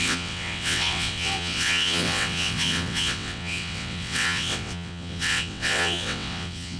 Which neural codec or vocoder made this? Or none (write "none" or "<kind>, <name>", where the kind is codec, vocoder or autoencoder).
vocoder, WaveNeXt